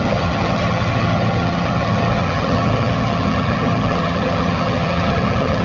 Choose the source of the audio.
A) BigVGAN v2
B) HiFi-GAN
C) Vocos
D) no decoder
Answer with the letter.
B